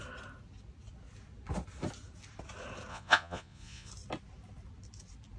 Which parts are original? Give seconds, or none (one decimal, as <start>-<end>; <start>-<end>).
0.0-2.9; 3.9-5.4